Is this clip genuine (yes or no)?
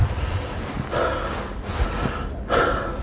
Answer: yes